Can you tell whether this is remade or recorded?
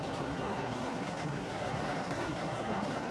remade